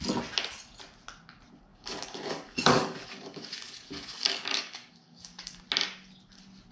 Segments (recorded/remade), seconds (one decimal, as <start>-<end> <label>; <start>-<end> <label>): 0.0-1.7 recorded; 1.7-5.6 remade; 5.6-6.7 recorded